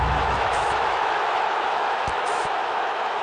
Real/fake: fake